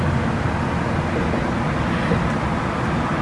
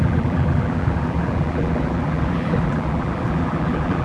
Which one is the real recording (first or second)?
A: first